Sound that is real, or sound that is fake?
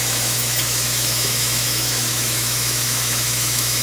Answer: fake